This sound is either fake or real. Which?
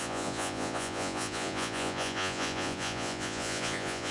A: fake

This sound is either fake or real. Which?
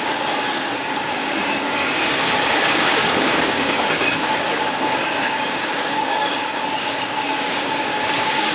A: fake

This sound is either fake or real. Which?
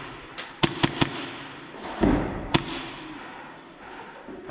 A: real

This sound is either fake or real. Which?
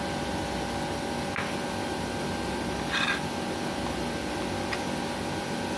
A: real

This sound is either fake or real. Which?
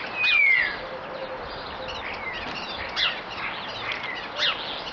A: real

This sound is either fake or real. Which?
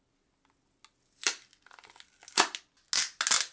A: real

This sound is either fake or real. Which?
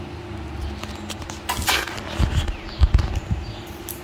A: real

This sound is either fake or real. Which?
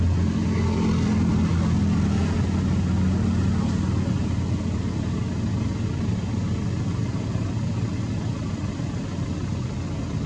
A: real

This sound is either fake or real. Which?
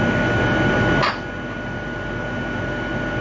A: real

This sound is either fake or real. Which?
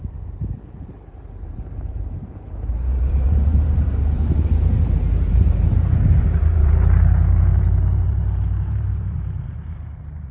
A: fake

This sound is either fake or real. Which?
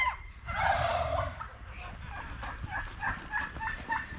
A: real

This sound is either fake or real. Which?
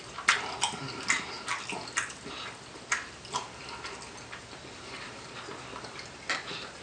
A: real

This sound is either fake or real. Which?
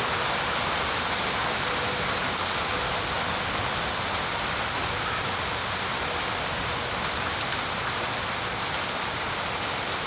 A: real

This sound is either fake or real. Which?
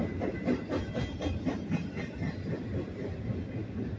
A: real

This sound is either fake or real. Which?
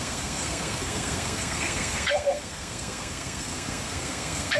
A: fake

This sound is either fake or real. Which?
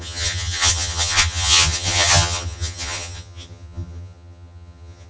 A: fake